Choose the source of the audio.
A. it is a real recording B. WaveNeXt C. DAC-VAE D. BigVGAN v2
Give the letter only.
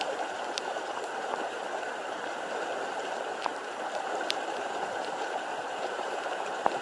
D